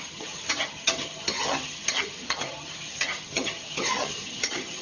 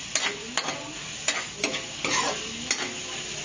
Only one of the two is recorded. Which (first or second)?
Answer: second